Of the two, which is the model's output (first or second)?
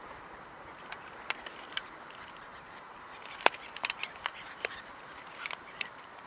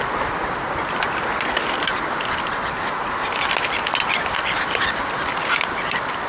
first